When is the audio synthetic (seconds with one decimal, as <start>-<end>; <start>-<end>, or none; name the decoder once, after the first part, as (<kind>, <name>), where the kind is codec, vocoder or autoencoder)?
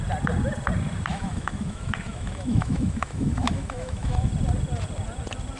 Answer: 1.1-4.3 (autoencoder, DAC-VAE)